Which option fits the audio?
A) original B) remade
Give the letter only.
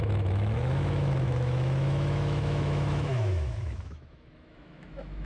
B